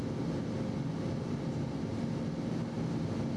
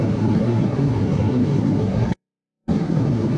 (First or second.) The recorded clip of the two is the first